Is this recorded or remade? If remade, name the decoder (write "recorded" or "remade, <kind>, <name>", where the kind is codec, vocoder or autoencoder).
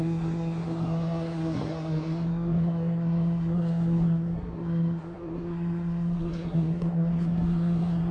remade, codec, SNAC